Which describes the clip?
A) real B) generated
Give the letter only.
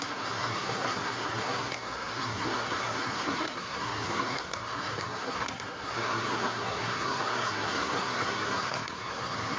B